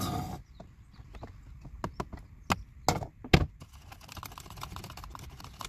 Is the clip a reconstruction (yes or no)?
no